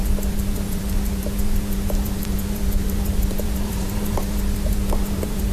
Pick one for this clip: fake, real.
fake